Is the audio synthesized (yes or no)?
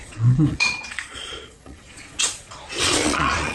yes